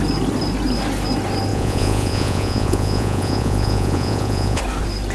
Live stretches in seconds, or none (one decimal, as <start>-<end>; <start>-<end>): 0.0-1.5; 4.6-5.1